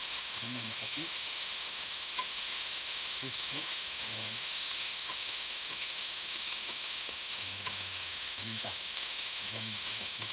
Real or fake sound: fake